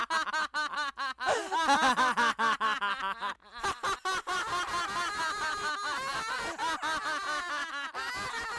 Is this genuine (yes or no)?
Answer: yes